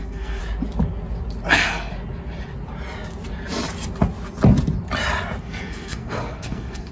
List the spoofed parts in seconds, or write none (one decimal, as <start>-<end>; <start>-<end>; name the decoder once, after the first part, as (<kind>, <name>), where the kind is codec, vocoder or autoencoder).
0.0-0.4 (codec, SNAC); 1.5-1.9; 5.4-6.9